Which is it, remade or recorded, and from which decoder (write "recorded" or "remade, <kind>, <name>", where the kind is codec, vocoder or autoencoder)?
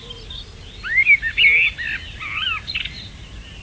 recorded